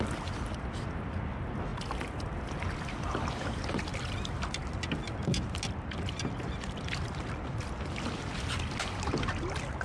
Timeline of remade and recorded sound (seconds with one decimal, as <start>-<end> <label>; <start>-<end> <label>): 0.0-9.8 recorded